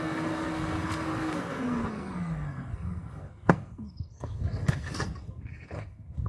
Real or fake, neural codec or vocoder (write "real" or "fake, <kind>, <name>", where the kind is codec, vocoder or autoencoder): fake, codec, SNAC